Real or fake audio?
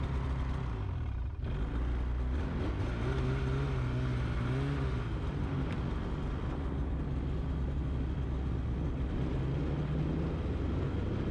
real